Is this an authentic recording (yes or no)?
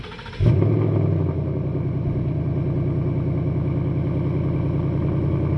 yes